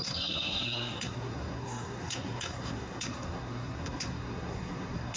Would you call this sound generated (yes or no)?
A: yes